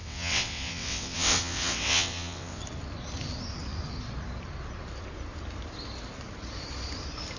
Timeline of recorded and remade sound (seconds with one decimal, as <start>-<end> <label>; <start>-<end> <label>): 0.0-2.6 remade; 2.6-7.4 recorded